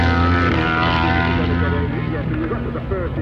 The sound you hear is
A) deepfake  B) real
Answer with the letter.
B